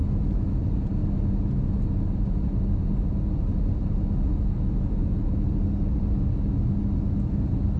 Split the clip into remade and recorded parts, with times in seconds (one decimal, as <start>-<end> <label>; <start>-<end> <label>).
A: 0.0-0.6 remade; 0.6-7.8 recorded